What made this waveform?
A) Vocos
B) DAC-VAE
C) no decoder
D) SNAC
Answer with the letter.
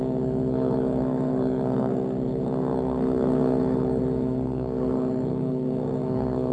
D